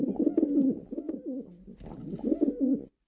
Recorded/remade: recorded